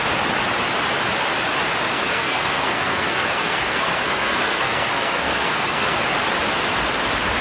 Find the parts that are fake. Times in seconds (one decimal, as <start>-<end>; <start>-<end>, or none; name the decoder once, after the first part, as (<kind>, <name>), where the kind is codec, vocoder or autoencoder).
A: 1.9-6.0 (codec, SNAC)